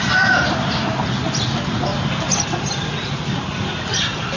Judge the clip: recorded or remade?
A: recorded